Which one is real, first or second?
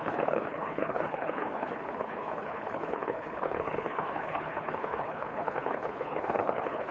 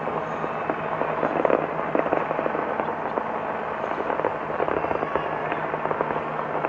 second